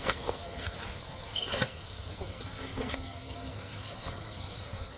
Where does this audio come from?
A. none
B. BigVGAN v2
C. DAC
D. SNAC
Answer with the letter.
D